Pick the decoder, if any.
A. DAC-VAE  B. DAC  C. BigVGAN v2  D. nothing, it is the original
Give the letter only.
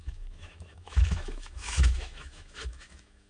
A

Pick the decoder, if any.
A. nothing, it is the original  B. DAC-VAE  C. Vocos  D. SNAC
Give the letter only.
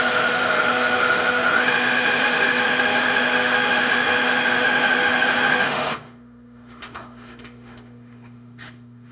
B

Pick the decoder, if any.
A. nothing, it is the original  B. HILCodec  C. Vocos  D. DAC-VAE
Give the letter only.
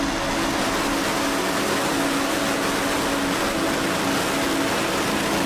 A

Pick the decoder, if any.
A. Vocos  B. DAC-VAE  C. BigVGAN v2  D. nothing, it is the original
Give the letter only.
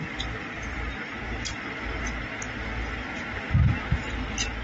D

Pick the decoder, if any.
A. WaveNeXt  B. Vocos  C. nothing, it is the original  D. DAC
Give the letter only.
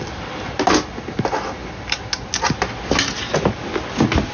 C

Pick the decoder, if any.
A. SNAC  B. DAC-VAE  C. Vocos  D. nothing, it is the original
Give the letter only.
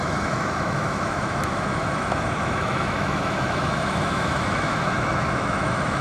B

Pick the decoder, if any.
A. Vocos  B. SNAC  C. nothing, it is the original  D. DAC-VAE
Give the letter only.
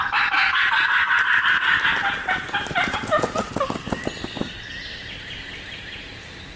C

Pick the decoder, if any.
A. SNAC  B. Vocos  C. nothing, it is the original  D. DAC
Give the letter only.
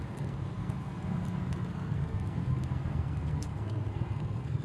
A